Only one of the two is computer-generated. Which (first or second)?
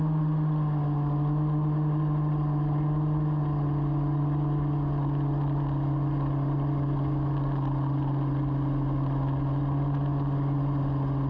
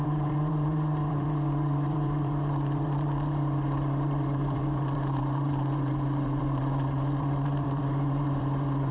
second